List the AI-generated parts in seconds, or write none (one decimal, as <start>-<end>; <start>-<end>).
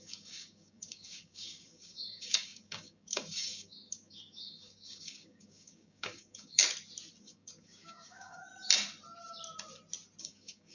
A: 0.0-6.6; 7.2-8.5; 10.2-10.7